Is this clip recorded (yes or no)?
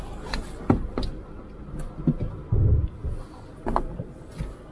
yes